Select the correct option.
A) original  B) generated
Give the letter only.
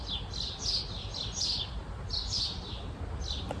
A